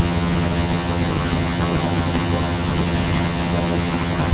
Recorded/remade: remade